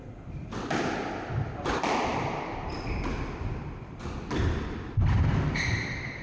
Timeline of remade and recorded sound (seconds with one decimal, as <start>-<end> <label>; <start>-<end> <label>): 0.0-6.2 recorded